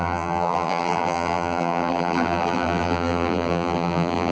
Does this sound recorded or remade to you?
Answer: remade